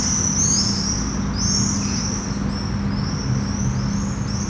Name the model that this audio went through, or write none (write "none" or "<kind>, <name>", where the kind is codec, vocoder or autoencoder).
none